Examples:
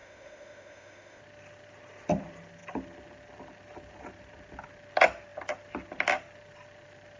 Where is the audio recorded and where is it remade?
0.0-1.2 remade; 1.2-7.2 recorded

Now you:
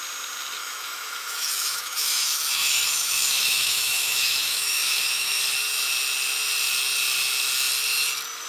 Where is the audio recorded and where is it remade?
0.0-0.6 recorded; 0.6-5.4 remade; 5.4-8.5 recorded

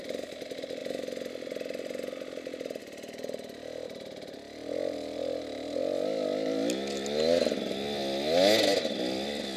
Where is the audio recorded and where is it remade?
0.0-9.6 recorded

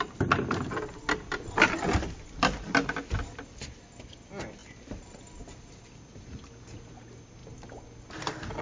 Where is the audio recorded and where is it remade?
0.0-8.6 recorded